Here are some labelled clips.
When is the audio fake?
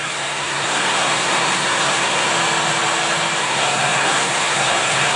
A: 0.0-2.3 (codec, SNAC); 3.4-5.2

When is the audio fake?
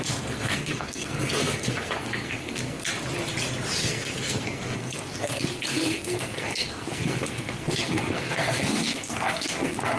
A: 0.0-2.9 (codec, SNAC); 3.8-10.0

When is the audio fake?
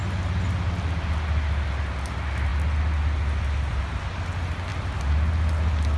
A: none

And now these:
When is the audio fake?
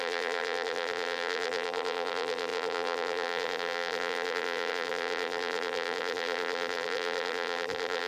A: 0.0-8.1 (vocoder, BigVGAN v2)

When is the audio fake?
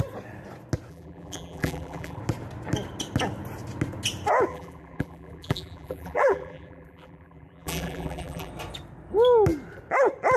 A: 0.9-2.2 (vocoder, BigVGAN v2); 4.5-8.5